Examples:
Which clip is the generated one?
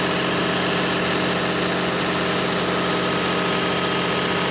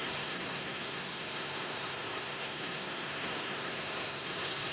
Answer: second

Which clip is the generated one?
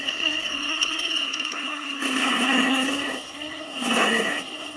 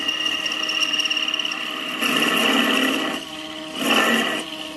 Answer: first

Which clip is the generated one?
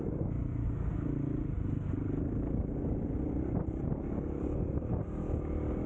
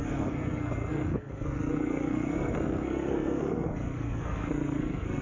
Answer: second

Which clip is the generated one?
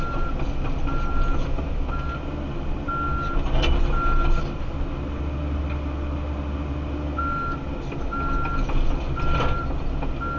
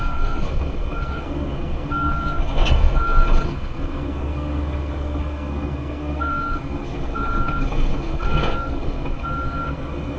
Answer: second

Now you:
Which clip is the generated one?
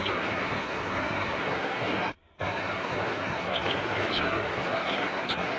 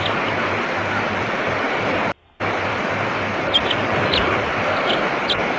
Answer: first